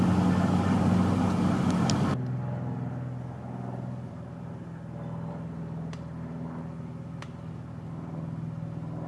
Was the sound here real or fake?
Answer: real